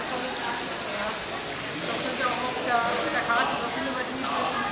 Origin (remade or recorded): recorded